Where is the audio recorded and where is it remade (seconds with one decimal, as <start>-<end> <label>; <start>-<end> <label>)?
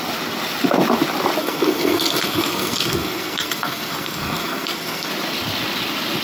0.0-1.4 recorded; 1.4-5.1 remade; 5.1-6.2 recorded